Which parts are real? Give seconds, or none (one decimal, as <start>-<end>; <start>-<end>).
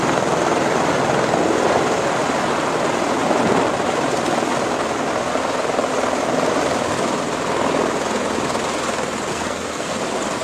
0.0-9.3; 10.0-10.4